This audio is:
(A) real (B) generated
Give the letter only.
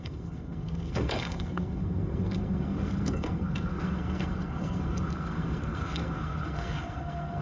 B